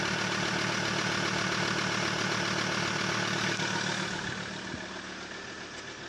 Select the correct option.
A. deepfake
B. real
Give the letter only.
B